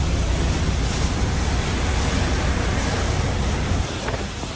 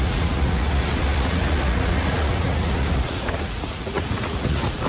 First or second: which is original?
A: first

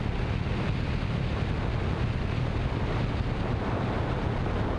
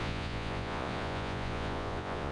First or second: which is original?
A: first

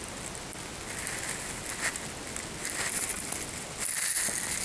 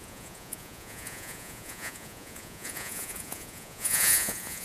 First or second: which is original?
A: first